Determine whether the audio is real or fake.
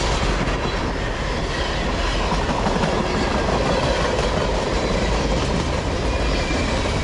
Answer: real